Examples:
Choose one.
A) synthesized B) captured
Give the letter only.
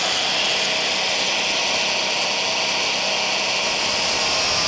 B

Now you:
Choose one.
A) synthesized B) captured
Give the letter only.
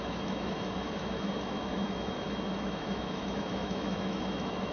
A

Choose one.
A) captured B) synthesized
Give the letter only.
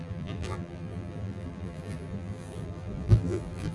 B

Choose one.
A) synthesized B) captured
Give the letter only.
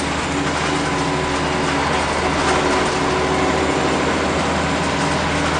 B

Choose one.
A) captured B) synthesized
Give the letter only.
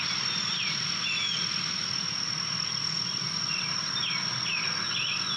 A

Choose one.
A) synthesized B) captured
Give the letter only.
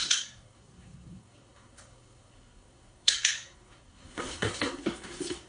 A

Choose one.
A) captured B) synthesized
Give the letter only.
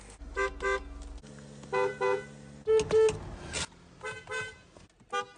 A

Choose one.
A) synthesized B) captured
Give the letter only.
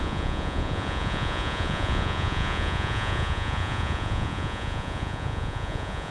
A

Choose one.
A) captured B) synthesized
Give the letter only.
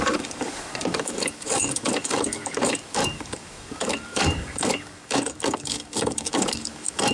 B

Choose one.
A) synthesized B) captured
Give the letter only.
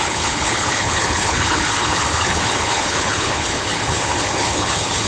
A